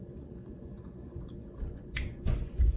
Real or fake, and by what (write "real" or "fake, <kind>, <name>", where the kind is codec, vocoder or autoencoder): fake, vocoder, Vocos